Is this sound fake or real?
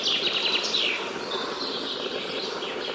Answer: real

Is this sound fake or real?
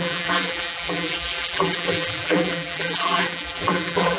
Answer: fake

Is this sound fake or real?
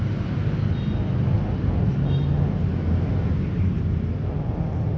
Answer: real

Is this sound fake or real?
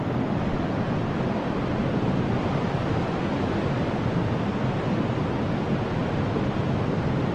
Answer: real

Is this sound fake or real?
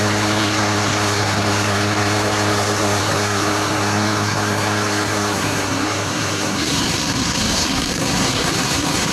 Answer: fake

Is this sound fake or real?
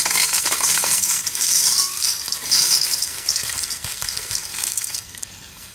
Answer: fake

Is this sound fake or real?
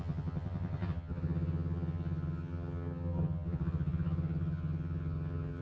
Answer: fake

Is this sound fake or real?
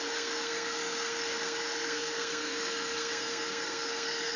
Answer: fake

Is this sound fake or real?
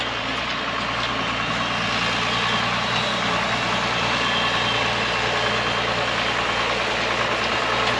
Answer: real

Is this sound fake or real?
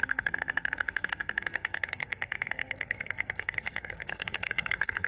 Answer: fake